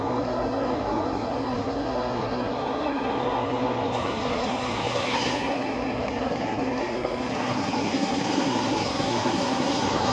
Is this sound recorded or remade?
remade